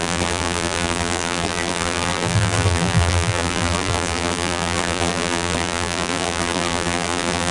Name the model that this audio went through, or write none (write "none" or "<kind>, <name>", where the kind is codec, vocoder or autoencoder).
vocoder, BigVGAN v2